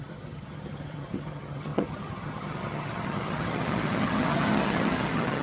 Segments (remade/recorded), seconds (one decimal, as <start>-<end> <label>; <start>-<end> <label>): 0.0-5.4 remade